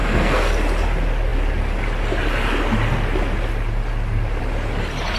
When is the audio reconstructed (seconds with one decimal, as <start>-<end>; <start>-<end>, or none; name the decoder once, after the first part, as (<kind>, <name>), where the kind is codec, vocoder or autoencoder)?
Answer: 0.0-0.5 (codec, SNAC)